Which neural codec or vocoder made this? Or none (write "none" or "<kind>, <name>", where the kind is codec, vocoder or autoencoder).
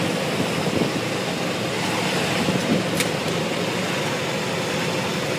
none